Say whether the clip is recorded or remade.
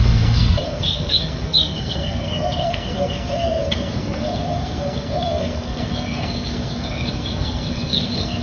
remade